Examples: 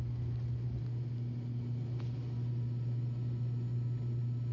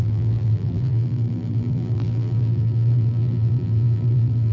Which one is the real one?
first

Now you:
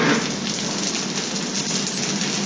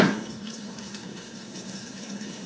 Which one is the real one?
first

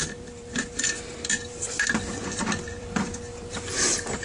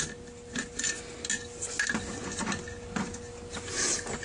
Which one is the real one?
second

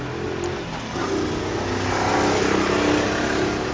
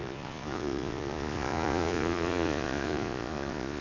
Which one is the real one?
first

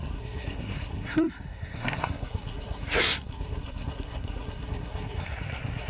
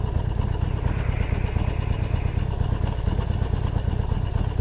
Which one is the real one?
second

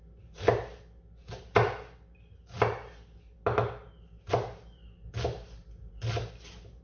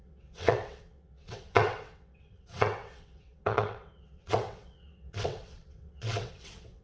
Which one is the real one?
first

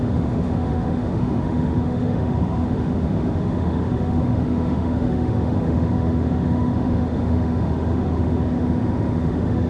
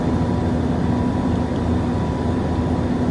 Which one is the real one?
second